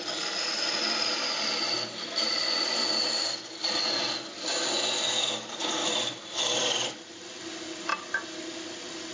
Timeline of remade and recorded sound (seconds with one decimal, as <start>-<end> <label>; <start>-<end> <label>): 0.0-5.8 recorded; 5.8-7.4 remade; 7.4-9.1 recorded